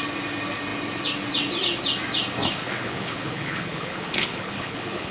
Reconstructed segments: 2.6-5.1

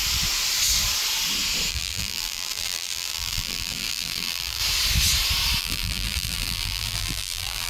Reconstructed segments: 1.7-4.6; 5.6-7.7

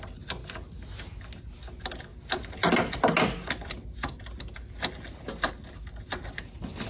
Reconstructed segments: none

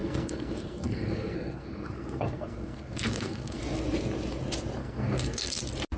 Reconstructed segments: 0.0-3.6; 4.8-5.6

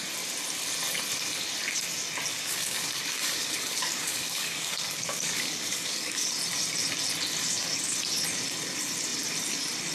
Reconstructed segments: 2.3-6.3